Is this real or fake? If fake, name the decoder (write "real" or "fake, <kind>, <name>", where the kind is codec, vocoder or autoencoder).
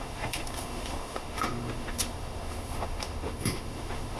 fake, autoencoder, DAC-VAE